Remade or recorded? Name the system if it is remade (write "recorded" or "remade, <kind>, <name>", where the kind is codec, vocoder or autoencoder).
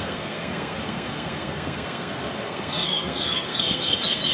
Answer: remade, codec, SNAC